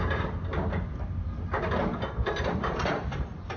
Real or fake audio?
real